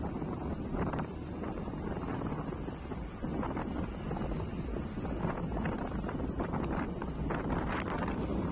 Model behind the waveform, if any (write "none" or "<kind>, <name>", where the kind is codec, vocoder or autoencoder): none